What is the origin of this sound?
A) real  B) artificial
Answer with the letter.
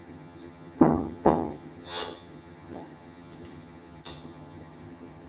B